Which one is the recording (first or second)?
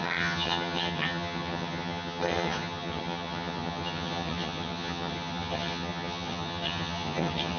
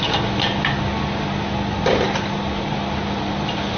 second